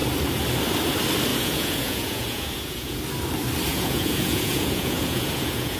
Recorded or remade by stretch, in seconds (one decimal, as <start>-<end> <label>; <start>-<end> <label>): 0.0-1.3 recorded; 1.3-3.0 remade; 3.0-3.7 recorded; 3.7-5.8 remade